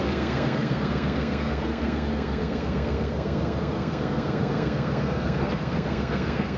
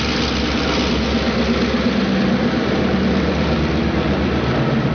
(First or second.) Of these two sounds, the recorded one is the second